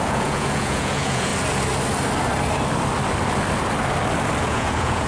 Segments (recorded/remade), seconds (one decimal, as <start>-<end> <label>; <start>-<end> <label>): 0.0-1.3 remade; 1.3-4.4 recorded; 4.4-5.1 remade